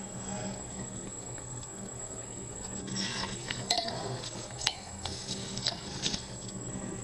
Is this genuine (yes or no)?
no